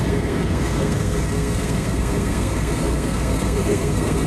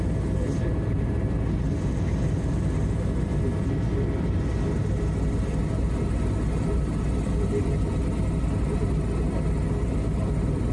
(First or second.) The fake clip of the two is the first